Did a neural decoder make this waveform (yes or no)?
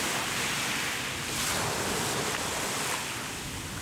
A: no